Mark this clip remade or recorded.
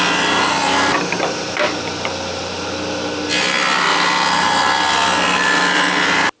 recorded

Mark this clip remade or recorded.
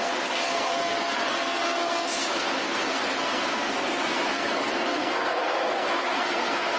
remade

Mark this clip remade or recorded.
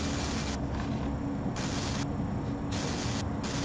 recorded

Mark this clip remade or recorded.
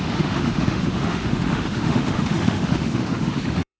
remade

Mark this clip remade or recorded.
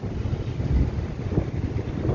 recorded